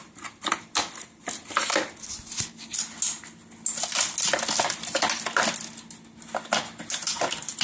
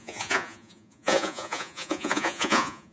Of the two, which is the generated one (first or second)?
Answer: second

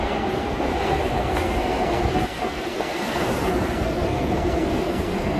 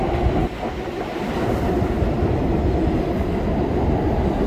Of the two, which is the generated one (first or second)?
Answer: first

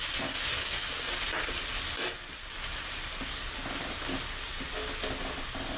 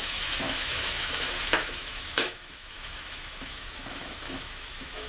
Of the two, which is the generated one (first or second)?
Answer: second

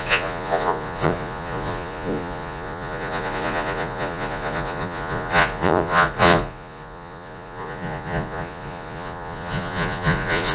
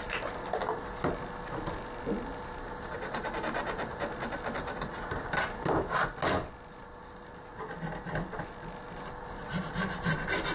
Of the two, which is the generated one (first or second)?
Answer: first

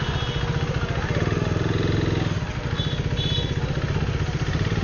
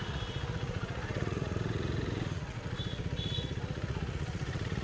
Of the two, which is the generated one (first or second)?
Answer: second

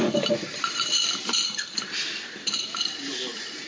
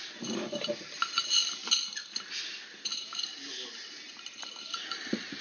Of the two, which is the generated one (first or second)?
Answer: first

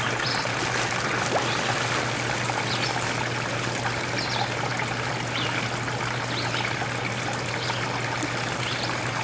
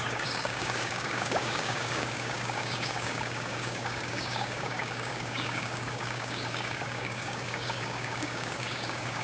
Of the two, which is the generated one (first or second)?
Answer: second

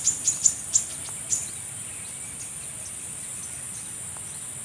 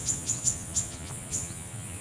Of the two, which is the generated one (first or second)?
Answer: second